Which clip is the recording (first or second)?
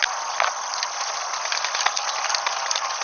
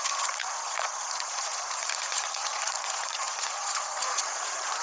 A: first